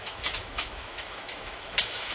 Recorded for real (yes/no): no